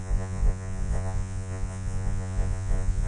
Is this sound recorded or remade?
remade